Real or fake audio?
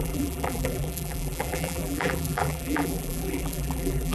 fake